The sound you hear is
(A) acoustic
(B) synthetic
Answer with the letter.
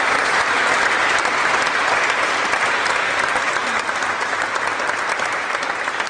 A